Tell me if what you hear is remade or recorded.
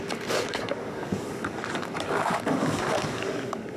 remade